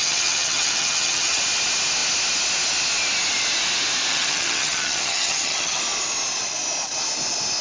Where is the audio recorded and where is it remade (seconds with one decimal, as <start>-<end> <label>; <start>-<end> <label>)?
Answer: 0.0-1.4 remade; 1.4-4.1 recorded; 4.1-5.8 remade; 5.8-7.6 recorded